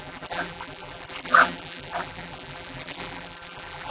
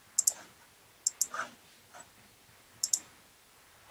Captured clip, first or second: second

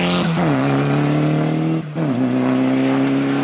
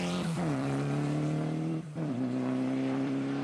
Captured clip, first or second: first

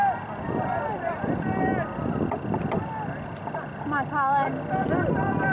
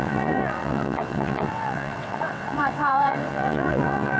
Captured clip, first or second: first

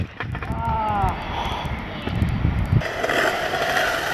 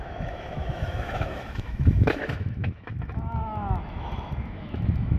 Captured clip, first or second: first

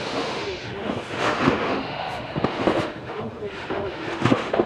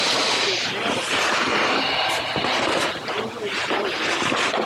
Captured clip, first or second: second